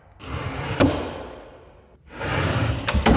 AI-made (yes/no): no